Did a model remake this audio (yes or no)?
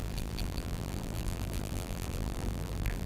yes